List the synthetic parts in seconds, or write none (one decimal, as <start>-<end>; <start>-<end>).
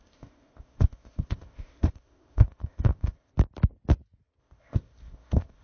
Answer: 0.0-3.3; 4.4-5.6